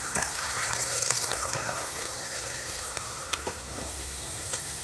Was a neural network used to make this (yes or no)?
yes